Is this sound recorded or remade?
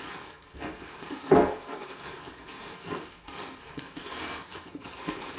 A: remade